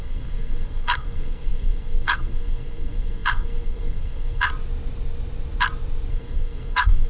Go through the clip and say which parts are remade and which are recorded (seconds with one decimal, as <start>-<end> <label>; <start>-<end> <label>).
0.0-4.5 remade; 4.5-6.1 recorded; 6.1-7.1 remade

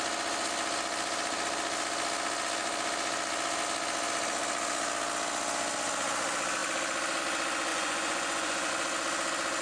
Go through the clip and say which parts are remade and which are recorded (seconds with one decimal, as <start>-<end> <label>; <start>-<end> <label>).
0.0-7.7 recorded; 7.7-8.7 remade; 8.7-9.6 recorded

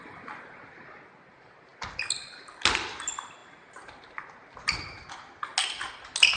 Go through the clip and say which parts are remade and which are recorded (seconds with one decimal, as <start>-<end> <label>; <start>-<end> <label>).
0.0-6.4 recorded

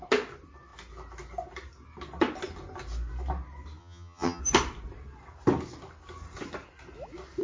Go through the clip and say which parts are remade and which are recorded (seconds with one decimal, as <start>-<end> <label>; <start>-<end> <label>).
0.0-3.8 recorded; 3.8-4.4 remade; 4.4-7.4 recorded

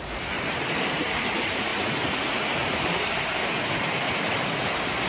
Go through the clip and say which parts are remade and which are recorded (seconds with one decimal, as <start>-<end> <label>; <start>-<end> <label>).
0.0-2.6 recorded; 2.6-3.7 remade; 3.7-5.1 recorded

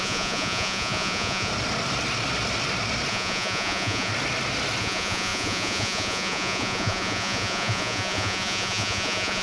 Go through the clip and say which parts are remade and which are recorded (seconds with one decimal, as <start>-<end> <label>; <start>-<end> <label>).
0.0-1.5 remade; 1.5-3.1 recorded; 3.1-4.1 remade; 4.1-4.8 recorded; 4.8-9.4 remade

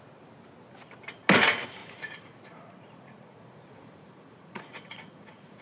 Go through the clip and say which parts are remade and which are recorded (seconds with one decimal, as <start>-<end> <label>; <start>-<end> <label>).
0.0-1.8 recorded; 1.8-5.6 remade

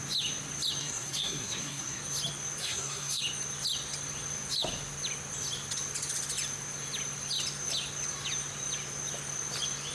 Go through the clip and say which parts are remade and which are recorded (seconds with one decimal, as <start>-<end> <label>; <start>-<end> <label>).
0.0-0.8 recorded; 0.8-2.0 remade; 2.0-2.6 recorded; 2.6-3.2 remade; 3.2-9.9 recorded